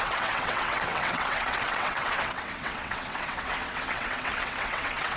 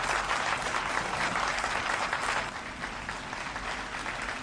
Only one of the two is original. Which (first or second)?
second